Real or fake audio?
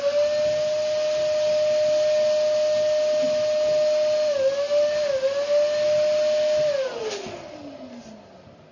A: real